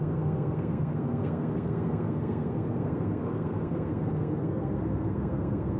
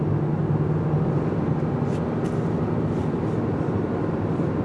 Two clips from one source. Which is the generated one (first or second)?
first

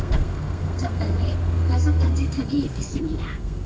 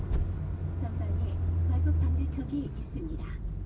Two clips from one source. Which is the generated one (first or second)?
first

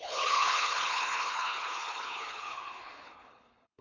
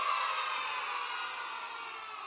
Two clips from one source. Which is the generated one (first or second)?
first